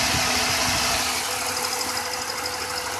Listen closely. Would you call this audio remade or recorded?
recorded